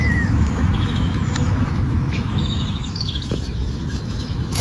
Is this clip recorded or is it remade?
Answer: remade